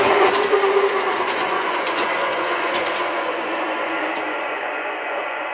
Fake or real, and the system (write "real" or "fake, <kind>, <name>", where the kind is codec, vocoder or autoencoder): fake, vocoder, Vocos